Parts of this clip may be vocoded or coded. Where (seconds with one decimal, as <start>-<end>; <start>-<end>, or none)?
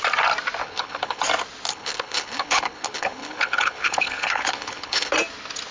0.6-1.2; 1.7-5.1